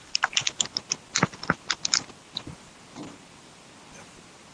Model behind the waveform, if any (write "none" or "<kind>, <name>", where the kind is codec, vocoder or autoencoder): none